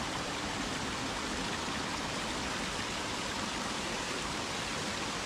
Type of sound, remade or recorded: remade